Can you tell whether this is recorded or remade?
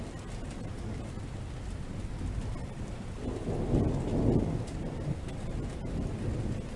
recorded